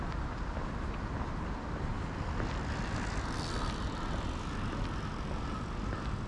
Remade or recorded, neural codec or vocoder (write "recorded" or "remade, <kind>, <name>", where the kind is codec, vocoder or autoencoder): recorded